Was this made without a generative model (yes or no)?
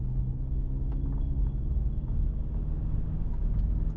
no